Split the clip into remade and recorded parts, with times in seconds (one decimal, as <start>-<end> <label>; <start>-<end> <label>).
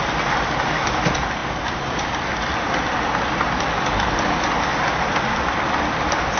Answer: 0.0-6.4 recorded